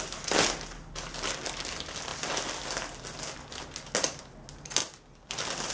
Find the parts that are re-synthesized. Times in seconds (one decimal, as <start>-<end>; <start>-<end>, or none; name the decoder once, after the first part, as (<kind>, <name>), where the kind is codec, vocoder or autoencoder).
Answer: none

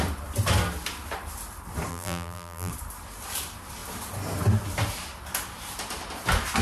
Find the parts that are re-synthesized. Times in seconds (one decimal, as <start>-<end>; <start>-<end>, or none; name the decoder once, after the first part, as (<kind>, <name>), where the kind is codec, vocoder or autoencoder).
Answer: 1.9-2.7 (vocoder, BigVGAN v2)